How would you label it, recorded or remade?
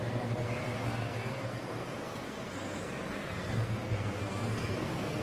remade